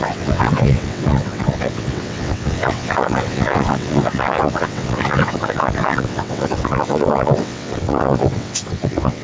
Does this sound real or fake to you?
fake